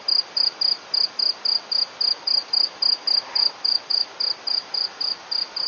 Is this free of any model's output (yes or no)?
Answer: yes